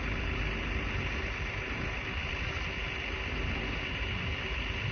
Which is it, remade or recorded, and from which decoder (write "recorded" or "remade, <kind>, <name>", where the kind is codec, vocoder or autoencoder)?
recorded